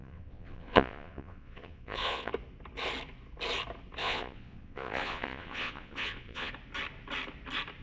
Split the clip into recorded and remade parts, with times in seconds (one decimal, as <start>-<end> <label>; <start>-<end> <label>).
0.0-2.3 remade; 2.3-4.0 recorded; 4.0-6.5 remade; 6.5-7.8 recorded